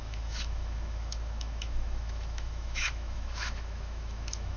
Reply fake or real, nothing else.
fake